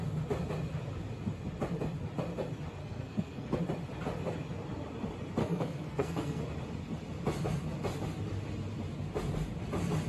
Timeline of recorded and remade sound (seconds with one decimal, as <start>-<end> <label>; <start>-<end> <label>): 0.0-2.8 recorded; 2.8-3.6 remade; 3.6-5.4 recorded; 5.4-6.4 remade; 6.4-10.1 recorded